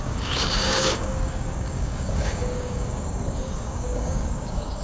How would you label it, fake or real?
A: fake